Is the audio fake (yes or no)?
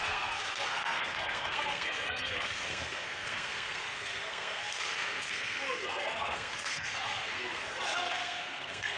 yes